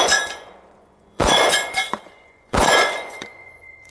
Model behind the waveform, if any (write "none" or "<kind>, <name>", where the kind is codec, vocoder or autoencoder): vocoder, Vocos